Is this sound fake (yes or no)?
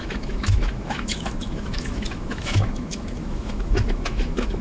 yes